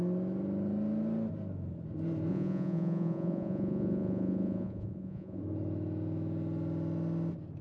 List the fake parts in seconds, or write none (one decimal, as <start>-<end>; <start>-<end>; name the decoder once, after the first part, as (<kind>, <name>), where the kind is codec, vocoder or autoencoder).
2.3-5.4 (vocoder, Vocos)